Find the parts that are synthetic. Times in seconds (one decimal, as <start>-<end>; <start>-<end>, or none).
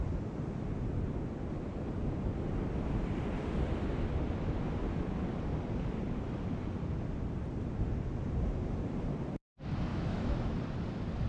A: 9.9-10.6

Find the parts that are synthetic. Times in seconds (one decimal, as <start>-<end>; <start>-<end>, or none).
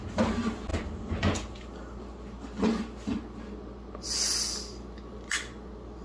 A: none